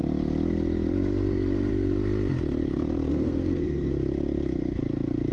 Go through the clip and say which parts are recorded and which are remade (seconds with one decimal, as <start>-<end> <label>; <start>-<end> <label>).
0.0-3.1 recorded; 3.1-3.9 remade; 3.9-5.3 recorded